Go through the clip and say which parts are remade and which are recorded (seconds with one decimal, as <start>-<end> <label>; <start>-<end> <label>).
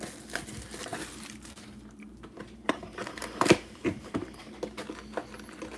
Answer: 0.0-0.9 recorded; 0.9-4.4 remade; 4.4-5.8 recorded